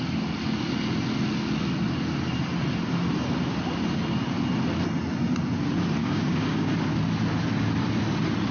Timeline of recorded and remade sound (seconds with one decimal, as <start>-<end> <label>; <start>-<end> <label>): 0.0-6.0 recorded; 6.0-6.7 remade; 6.7-8.5 recorded